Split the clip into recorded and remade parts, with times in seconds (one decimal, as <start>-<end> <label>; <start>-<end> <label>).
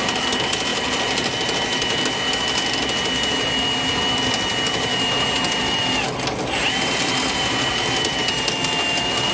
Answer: 0.0-9.3 recorded